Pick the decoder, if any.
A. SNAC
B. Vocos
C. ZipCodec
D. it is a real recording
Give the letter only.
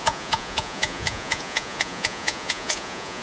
B